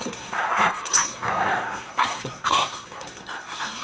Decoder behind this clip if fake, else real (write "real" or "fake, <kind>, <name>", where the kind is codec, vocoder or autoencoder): fake, codec, SNAC